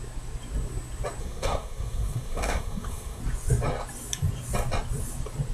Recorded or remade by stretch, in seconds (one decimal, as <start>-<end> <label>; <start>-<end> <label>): 0.0-1.2 recorded; 1.2-3.2 remade; 3.2-5.5 recorded